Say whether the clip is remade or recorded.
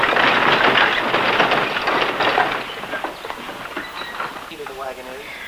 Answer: recorded